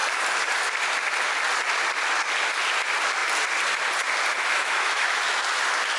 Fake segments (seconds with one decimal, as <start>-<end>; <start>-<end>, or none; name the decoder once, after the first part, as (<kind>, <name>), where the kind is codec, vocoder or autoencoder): 4.3-5.4 (autoencoder, DAC-VAE)